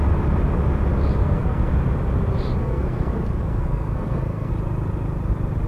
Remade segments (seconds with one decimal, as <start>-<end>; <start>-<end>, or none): 1.2-1.7; 2.6-4.5